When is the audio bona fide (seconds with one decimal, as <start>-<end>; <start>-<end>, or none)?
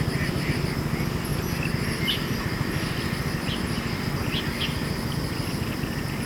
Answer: 0.0-6.3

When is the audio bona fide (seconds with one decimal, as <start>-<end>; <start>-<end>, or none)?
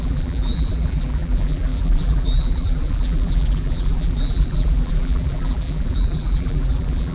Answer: none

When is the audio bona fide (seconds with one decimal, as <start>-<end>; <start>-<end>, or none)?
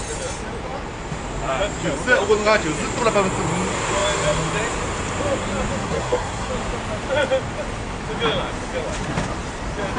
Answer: 0.0-5.8; 6.5-10.0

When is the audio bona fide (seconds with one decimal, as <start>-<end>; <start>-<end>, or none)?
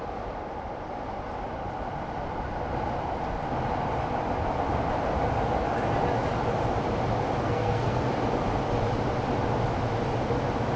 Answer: 0.0-7.4; 8.1-10.8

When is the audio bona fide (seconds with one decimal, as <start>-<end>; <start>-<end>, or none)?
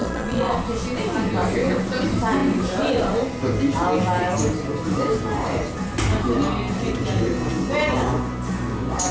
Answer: 0.5-9.1